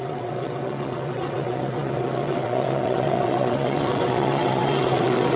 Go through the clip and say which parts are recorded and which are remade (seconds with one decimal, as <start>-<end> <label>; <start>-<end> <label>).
0.0-5.4 remade